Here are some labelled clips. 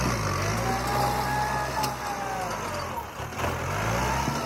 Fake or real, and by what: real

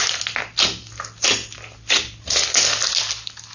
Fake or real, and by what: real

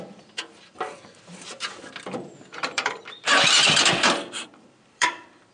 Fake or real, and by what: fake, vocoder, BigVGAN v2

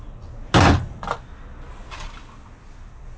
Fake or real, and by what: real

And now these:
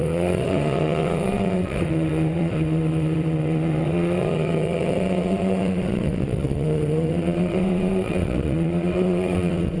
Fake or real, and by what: fake, vocoder, WaveNeXt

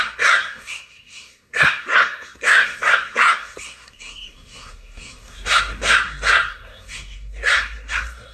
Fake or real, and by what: fake, codec, SNAC